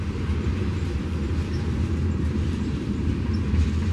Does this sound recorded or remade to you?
remade